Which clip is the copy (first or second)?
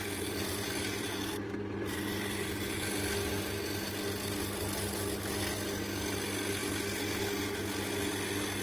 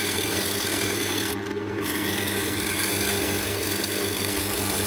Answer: second